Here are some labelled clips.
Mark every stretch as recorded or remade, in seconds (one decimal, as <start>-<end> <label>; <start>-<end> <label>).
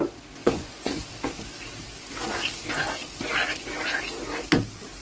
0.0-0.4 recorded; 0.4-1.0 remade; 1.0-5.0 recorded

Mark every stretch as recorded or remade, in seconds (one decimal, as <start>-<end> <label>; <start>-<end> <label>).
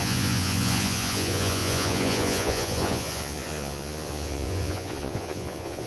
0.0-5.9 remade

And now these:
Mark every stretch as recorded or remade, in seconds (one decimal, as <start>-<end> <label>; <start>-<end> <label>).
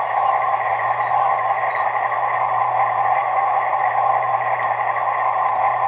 0.0-0.7 recorded; 0.7-1.7 remade; 1.7-3.2 recorded; 3.2-3.7 remade; 3.7-5.9 recorded